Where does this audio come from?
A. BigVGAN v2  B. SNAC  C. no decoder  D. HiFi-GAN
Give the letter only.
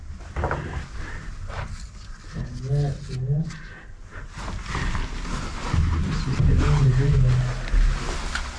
C